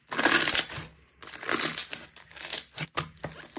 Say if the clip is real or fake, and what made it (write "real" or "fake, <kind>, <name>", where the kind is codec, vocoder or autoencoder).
real